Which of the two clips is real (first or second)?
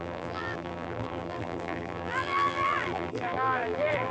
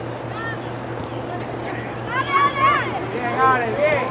second